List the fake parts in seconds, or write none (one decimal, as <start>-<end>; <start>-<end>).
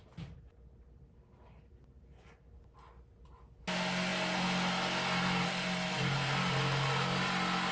none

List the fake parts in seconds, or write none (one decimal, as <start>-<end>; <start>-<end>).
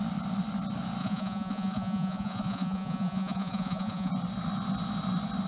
1.0-4.1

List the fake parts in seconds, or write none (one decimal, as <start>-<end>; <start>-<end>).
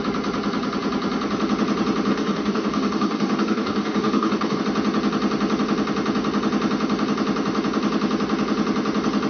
2.1-4.6